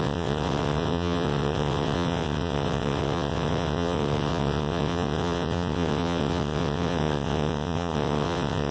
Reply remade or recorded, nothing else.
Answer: remade